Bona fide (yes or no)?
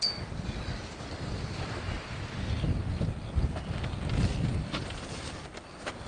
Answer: yes